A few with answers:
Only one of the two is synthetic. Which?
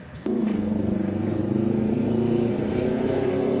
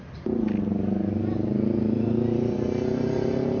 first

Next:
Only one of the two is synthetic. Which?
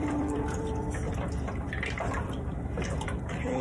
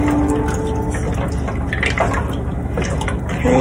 first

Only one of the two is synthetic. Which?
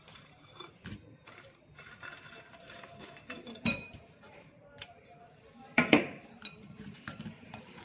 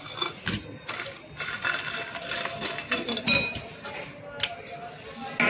first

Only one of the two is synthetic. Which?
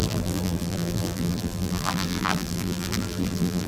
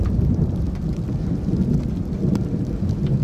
first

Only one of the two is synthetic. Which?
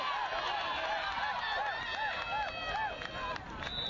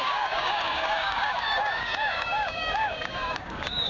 second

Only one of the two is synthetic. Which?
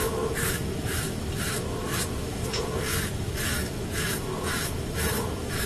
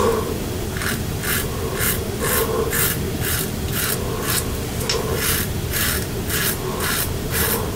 first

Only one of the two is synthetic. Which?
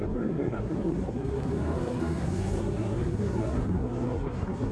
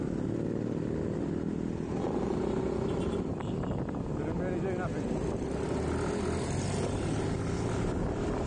first